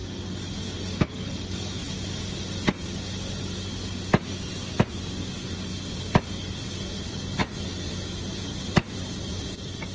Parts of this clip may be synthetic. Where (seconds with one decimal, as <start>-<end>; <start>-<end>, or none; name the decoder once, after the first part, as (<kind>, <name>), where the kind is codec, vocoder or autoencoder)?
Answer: none